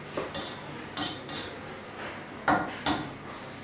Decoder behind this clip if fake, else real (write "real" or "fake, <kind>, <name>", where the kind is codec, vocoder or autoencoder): real